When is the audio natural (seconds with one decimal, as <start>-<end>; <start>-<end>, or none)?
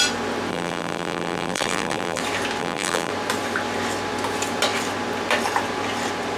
0.0-0.5; 2.2-2.6; 3.1-6.4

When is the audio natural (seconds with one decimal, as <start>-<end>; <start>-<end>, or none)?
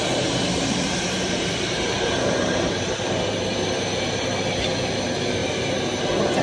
0.0-0.5; 4.1-5.4; 6.0-6.4